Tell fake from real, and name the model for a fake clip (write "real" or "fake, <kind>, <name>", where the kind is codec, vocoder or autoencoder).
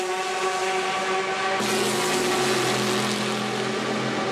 real